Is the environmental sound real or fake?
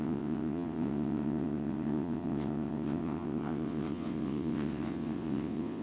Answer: fake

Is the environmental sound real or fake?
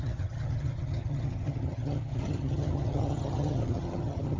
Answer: fake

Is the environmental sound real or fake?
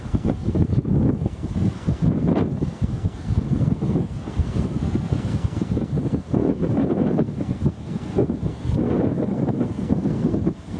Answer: fake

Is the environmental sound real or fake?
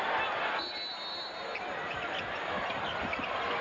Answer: real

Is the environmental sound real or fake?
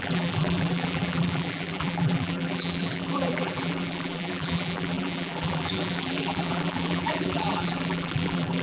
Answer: fake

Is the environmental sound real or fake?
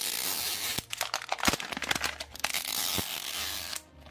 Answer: real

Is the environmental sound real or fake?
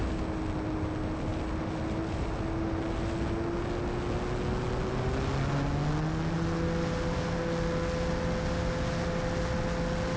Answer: real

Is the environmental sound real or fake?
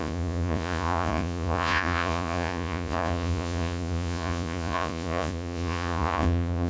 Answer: fake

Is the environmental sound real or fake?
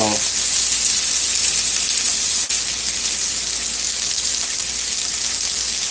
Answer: real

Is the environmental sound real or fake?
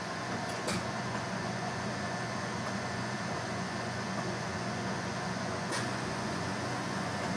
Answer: fake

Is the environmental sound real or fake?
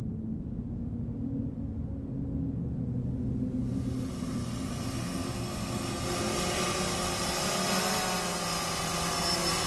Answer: real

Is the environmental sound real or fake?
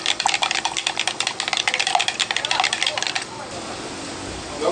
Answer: real